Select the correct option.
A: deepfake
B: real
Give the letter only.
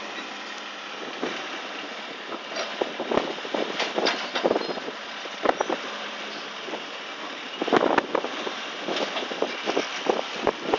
B